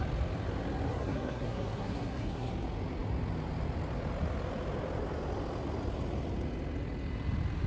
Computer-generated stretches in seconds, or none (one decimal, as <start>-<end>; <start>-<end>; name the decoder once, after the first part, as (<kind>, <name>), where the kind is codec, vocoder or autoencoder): 0.9-2.5 (codec, SNAC)